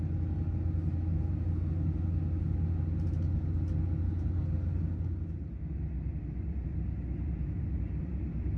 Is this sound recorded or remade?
recorded